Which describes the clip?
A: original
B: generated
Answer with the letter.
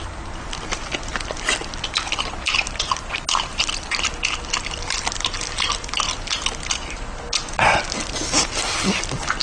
A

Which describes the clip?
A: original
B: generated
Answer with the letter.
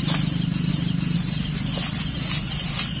A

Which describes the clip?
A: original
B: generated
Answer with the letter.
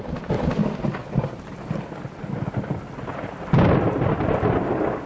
A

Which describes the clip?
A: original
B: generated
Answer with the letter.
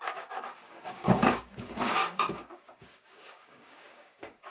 B